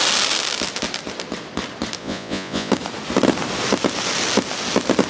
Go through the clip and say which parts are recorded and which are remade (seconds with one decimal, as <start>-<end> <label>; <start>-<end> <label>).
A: 0.0-2.0 recorded; 2.0-2.7 remade; 2.7-5.1 recorded